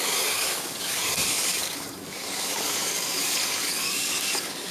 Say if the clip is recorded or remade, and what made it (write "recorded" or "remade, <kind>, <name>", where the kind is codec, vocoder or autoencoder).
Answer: remade, codec, DAC